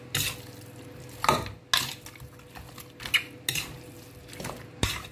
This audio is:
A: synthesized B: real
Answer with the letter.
B